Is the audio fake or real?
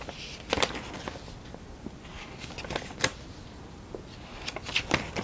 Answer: real